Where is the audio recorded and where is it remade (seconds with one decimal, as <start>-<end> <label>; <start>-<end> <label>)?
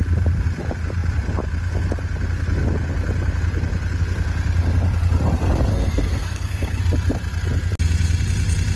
0.0-5.7 recorded; 5.7-6.8 remade; 6.8-8.8 recorded